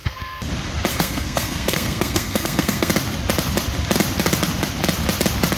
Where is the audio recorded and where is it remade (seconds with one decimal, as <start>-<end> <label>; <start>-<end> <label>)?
0.0-0.5 remade; 0.5-0.9 recorded; 0.9-2.9 remade; 2.9-5.6 recorded